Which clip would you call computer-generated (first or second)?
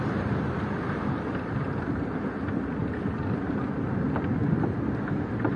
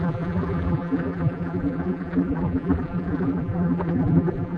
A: second